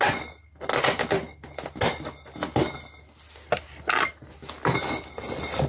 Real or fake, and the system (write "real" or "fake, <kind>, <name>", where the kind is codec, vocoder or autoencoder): real